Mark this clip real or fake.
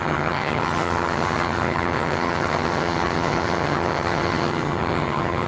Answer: fake